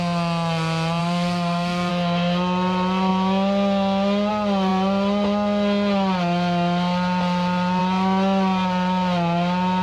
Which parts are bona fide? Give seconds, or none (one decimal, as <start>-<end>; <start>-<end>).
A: 0.0-1.0; 1.9-9.8